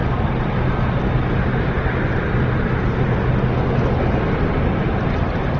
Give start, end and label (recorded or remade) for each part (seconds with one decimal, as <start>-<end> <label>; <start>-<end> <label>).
0.0-5.6 recorded